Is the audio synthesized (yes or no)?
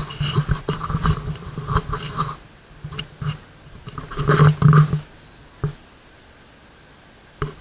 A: no